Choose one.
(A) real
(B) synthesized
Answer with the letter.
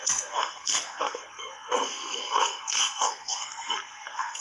B